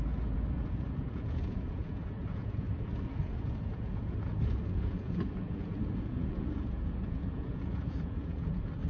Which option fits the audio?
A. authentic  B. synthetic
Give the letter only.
B